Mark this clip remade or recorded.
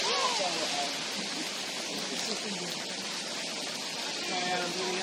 recorded